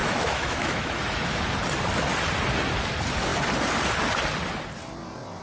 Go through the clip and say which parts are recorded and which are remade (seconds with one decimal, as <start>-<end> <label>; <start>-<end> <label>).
0.0-1.4 remade; 1.4-5.4 recorded